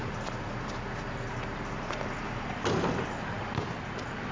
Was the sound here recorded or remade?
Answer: recorded